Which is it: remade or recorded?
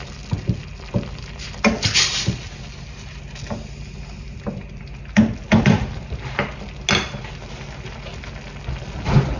recorded